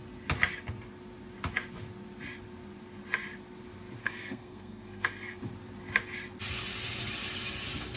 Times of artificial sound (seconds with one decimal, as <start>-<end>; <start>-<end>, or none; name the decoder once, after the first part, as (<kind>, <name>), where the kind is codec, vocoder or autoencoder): 4.0-5.4 (codec, SNAC)